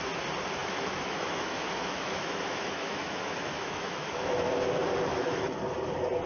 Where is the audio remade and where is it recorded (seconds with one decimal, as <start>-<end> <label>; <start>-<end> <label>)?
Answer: 0.0-0.6 recorded; 0.6-4.4 remade; 4.4-5.1 recorded; 5.1-5.6 remade; 5.6-6.3 recorded